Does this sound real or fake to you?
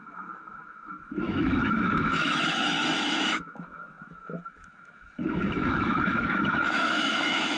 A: fake